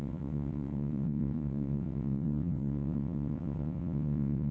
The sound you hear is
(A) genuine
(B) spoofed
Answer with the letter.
B